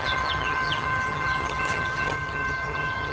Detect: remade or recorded remade